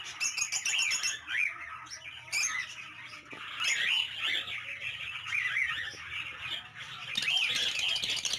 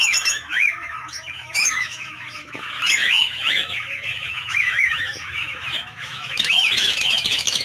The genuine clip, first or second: first